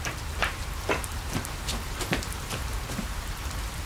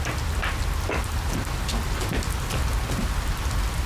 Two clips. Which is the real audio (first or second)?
second